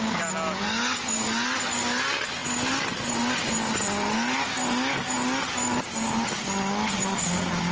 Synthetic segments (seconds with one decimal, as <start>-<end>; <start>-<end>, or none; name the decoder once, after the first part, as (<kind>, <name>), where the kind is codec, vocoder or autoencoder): none